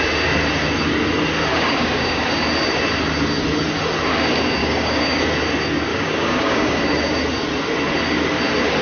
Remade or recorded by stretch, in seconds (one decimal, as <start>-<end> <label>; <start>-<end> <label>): 0.0-1.5 recorded; 1.5-2.3 remade; 2.3-4.6 recorded; 4.6-5.2 remade; 5.2-5.9 recorded; 5.9-6.8 remade; 6.8-8.8 recorded